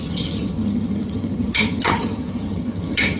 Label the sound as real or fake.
fake